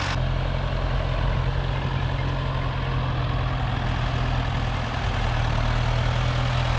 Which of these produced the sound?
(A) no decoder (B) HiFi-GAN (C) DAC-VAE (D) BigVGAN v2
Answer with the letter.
A